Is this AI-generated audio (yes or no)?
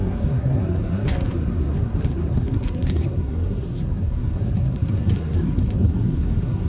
yes